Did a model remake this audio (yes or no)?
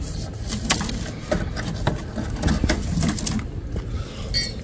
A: no